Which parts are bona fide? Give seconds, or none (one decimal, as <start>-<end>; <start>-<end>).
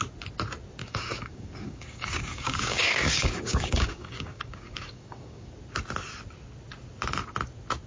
0.0-0.8; 5.5-7.9